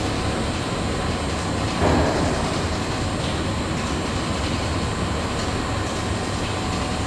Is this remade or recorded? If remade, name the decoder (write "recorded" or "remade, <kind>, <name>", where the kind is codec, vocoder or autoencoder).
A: recorded